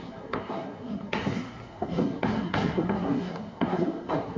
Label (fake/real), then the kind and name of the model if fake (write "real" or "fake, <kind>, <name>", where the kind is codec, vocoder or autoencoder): fake, codec, SNAC